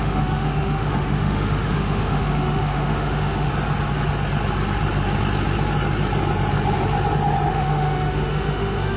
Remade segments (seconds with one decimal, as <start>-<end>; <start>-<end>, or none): 0.0-3.5; 7.5-9.0